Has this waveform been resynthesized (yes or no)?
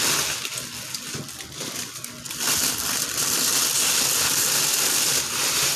no